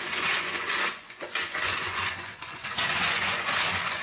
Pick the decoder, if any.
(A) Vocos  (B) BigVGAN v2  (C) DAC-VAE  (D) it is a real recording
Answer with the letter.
A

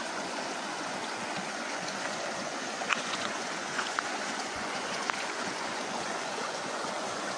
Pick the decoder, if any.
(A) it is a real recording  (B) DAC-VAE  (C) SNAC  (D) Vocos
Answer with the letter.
D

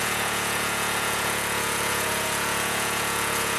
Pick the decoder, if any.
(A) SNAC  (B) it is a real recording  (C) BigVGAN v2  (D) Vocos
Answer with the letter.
D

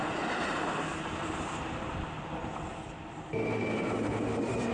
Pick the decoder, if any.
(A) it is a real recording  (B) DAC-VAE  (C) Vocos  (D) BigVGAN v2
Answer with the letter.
A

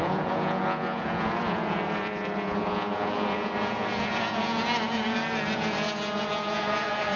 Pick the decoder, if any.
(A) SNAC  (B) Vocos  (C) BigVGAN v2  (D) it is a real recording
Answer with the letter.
B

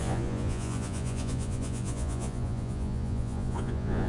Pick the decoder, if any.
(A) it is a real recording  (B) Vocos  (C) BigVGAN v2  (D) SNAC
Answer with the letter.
B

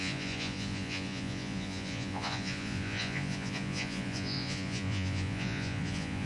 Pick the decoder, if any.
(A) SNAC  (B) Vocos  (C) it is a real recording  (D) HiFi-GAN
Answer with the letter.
B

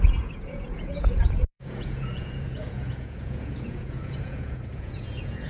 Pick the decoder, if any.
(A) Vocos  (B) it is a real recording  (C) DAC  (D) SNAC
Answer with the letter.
A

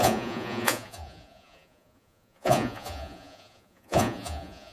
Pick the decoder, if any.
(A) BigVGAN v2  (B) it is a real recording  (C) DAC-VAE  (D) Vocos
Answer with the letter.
D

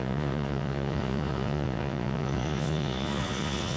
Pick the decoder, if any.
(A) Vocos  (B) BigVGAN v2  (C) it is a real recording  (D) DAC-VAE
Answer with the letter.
A